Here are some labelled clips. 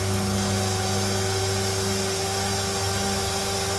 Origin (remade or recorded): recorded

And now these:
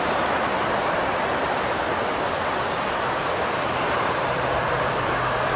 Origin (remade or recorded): remade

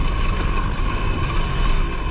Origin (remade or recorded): recorded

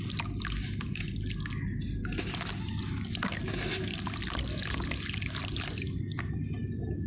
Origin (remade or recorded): recorded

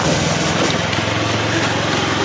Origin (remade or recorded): recorded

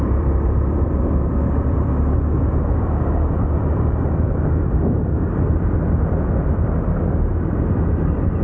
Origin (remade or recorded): remade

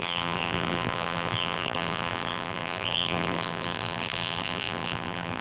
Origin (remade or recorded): remade